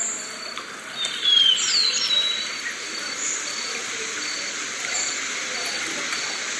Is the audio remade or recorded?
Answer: recorded